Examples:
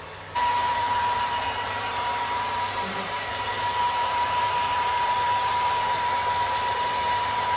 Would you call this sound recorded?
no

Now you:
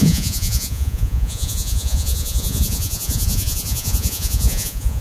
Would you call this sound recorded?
no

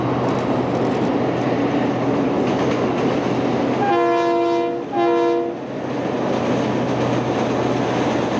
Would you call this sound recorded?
yes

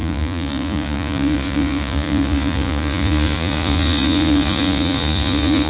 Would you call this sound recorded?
no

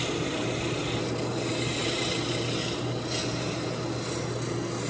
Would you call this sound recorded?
yes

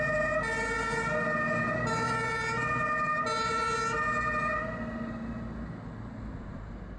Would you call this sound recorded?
yes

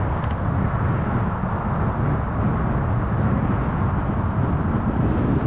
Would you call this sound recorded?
yes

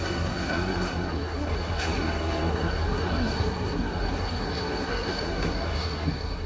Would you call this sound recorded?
no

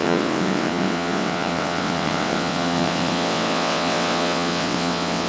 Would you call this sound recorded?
no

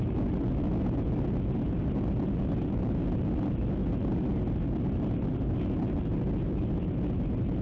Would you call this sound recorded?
yes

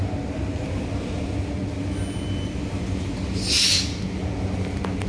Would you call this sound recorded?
yes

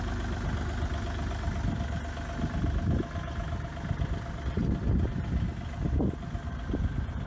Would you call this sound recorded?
yes